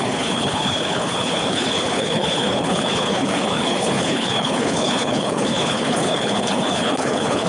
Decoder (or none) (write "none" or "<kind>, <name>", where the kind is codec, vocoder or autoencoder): codec, HILCodec